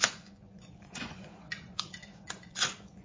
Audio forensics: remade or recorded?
remade